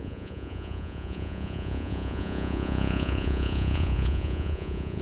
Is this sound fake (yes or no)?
yes